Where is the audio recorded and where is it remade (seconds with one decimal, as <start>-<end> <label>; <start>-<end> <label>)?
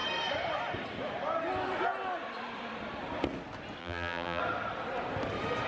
0.0-3.8 recorded; 3.8-4.4 remade; 4.4-5.7 recorded